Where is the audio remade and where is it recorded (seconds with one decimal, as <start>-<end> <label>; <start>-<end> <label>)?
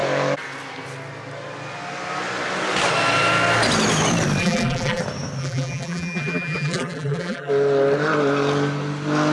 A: 0.0-4.4 recorded; 4.4-5.0 remade; 5.0-5.4 recorded; 5.4-7.5 remade; 7.5-9.3 recorded